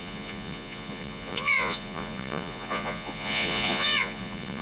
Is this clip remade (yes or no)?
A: yes